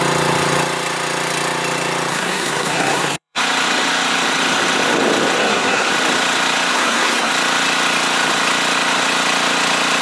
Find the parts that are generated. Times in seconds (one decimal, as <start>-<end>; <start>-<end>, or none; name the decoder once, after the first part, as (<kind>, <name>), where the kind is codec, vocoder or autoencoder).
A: 2.1-3.4 (codec, SNAC); 5.4-5.9; 6.7-7.3